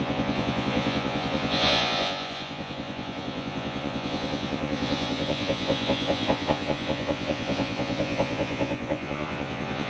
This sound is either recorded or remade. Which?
remade